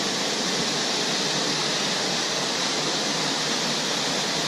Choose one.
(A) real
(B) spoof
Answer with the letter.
A